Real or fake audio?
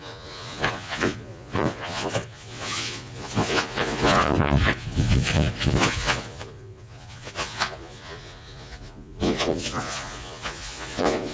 fake